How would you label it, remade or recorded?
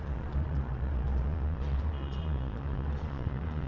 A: remade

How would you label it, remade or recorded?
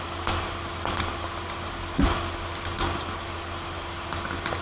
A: recorded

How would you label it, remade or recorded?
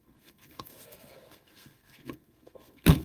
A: remade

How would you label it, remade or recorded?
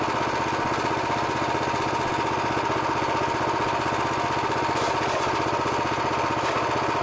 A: recorded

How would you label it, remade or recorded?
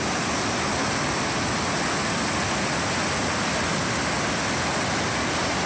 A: recorded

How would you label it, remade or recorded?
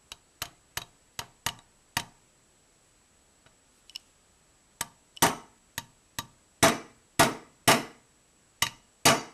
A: recorded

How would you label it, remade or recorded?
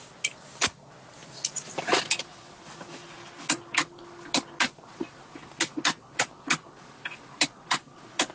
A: recorded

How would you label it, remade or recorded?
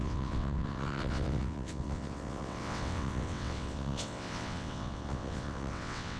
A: remade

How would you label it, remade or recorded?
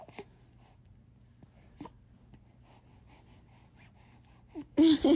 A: recorded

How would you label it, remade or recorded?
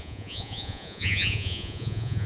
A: remade